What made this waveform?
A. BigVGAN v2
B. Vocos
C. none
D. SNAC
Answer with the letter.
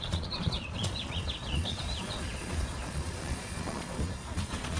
B